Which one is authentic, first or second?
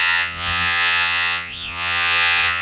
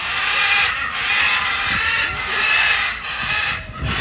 second